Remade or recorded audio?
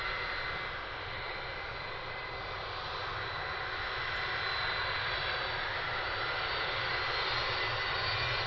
recorded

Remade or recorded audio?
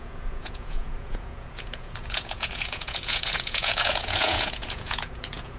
remade